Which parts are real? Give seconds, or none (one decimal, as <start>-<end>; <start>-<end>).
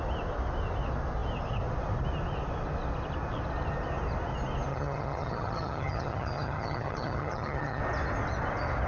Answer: 0.0-4.7; 7.8-8.9